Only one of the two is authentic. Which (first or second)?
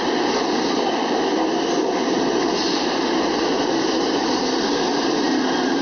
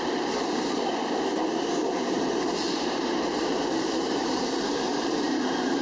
first